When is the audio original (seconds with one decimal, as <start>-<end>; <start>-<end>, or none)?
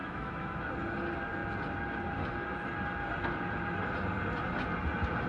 0.7-5.3